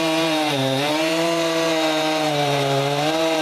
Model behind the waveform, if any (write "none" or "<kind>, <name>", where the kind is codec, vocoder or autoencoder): vocoder, BigVGAN v2